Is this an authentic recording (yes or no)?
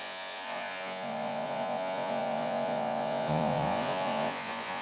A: no